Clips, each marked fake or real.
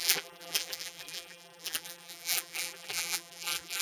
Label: fake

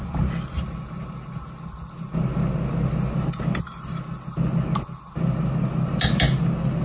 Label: real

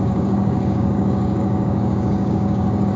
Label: fake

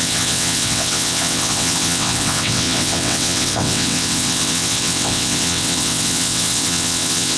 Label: fake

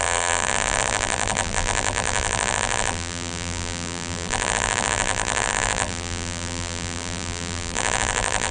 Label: fake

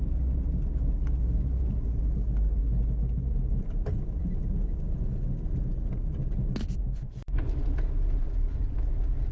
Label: real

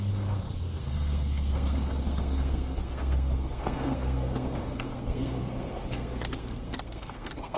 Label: fake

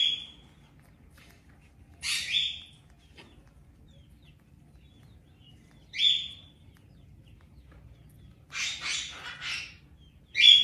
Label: real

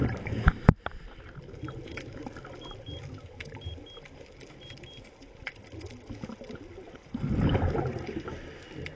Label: real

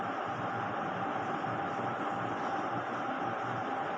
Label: real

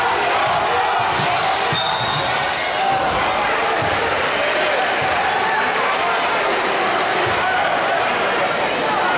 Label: real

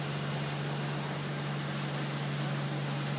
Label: real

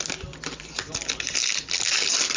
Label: real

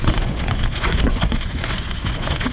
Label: fake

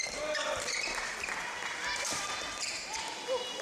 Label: real